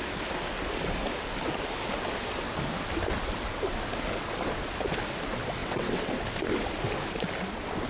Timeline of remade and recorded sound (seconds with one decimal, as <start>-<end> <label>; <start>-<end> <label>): 0.0-5.6 recorded; 5.6-6.1 remade; 6.1-7.9 recorded

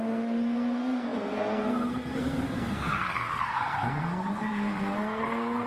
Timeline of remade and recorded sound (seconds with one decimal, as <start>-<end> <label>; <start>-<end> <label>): 0.0-5.7 remade

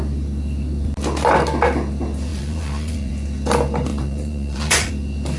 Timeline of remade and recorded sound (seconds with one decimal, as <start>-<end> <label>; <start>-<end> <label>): 0.0-2.3 recorded; 2.3-3.1 remade; 3.1-3.9 recorded; 3.9-4.9 remade; 4.9-5.4 recorded

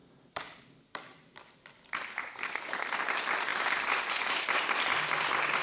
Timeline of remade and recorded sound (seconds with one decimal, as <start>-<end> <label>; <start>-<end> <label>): 0.0-5.6 recorded